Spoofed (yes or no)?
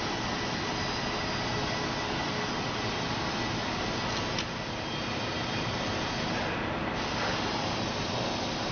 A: no